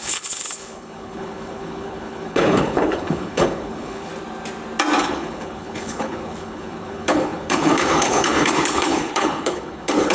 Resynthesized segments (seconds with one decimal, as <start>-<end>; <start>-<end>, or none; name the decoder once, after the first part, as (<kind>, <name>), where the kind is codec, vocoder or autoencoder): 0.0-4.1 (codec, HILCodec); 5.0-10.1